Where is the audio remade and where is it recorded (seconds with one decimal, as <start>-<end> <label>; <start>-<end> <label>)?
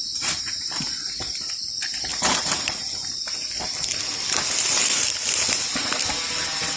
0.0-6.8 recorded